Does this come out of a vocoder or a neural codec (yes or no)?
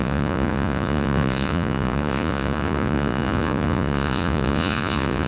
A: yes